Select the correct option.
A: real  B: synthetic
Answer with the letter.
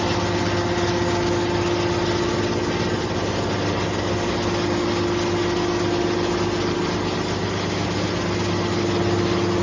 A